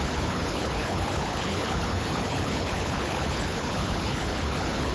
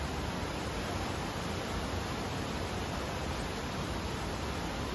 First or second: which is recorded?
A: second